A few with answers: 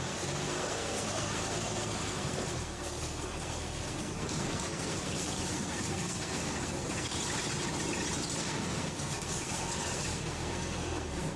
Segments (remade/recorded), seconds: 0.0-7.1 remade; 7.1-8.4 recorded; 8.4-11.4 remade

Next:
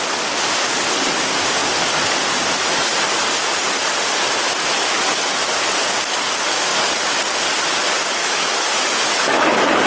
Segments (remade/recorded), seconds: 0.0-8.2 recorded; 8.2-9.9 remade

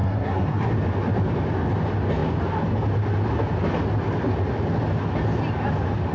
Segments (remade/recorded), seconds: 0.0-0.7 remade; 0.7-6.1 recorded

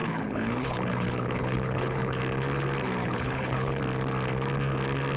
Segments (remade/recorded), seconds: 0.0-2.2 remade; 2.2-3.0 recorded; 3.0-3.8 remade; 3.8-5.2 recorded